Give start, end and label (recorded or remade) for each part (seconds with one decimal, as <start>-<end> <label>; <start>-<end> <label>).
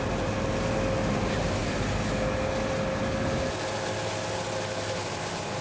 0.0-5.6 recorded